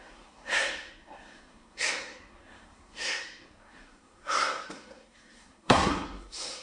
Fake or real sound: fake